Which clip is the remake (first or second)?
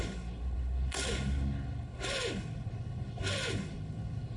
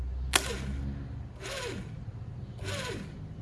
first